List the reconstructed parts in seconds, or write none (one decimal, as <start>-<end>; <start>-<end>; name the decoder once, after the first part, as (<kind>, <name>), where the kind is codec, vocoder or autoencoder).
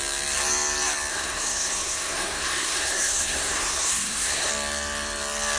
1.1-4.5 (codec, SNAC)